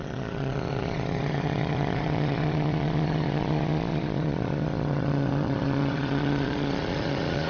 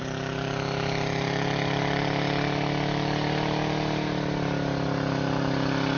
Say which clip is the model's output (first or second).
first